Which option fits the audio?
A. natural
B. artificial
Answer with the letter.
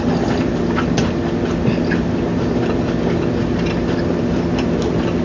A